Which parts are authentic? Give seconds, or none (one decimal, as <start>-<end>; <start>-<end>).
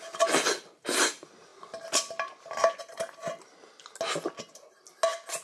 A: 0.0-5.4